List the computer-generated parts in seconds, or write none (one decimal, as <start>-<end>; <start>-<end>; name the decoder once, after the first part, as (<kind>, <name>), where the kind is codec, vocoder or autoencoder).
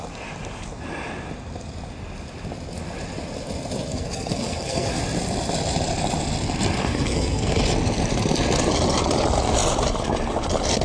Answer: 3.9-5.0 (codec, SNAC); 6.8-7.6